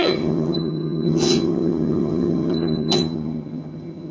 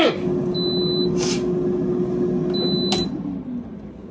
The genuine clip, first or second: second